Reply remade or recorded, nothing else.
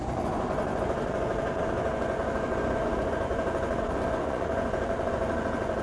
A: remade